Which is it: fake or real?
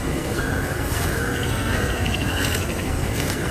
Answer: fake